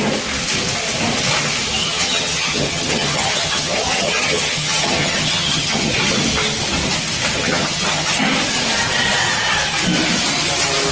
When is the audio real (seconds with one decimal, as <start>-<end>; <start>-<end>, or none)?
0.0-1.8; 5.9-7.4; 8.1-10.9